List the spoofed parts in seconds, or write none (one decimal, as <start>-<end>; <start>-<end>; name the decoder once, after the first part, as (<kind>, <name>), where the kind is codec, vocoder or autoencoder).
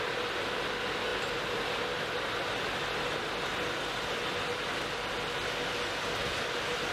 none